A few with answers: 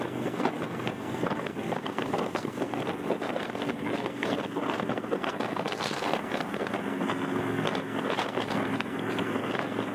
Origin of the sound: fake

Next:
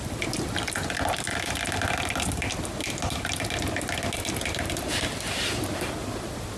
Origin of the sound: real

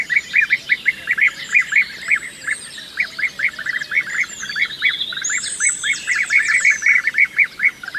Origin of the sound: real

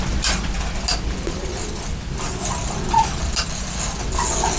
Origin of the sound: real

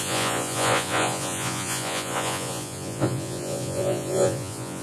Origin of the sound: fake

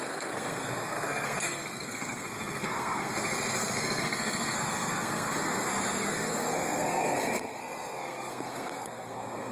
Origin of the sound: fake